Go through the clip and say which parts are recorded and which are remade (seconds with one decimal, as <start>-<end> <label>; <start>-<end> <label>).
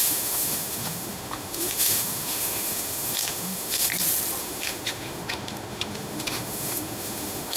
0.0-3.9 remade; 3.9-4.4 recorded; 4.4-7.6 remade